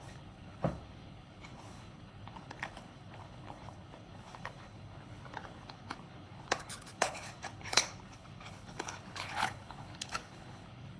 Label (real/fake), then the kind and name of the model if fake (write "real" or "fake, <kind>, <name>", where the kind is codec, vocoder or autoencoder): fake, codec, HILCodec